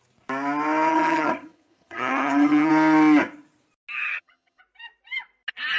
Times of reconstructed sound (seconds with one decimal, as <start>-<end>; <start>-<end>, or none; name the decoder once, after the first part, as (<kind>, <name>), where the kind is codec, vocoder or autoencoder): 0.9-2.7 (vocoder, HiFi-GAN); 4.1-4.6